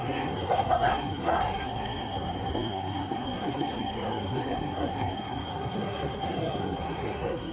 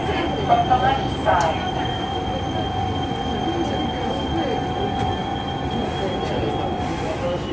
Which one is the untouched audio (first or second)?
second